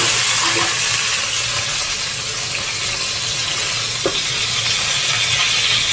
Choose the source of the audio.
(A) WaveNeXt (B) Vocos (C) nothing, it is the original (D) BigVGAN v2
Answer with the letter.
C